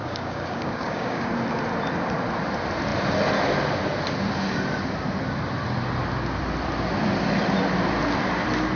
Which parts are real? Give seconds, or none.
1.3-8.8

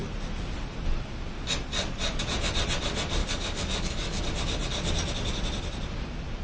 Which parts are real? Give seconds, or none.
0.0-3.2; 4.2-6.4

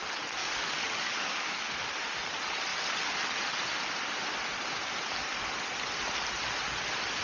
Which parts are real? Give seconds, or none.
0.0-0.4; 1.9-7.2

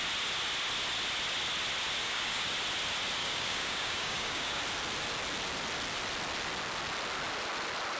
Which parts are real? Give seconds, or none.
0.0-2.0; 2.5-3.2; 4.6-8.0

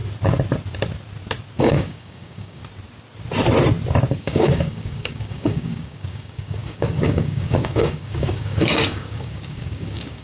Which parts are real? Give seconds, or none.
0.0-1.6; 2.6-4.1

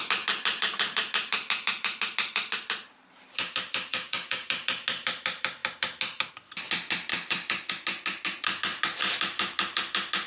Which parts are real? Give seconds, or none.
0.0-3.9; 4.5-7.1; 7.7-10.3